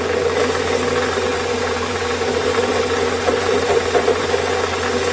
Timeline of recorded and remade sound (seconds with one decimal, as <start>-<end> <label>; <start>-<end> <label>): 0.0-1.3 recorded; 1.3-2.8 remade; 2.8-3.3 recorded; 3.3-4.2 remade; 4.2-5.1 recorded